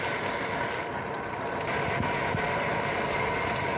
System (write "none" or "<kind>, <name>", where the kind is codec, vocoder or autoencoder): none